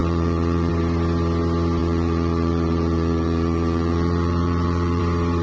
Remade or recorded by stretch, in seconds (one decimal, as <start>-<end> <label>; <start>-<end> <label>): 0.0-0.7 remade; 0.7-1.8 recorded; 1.8-5.0 remade; 5.0-5.4 recorded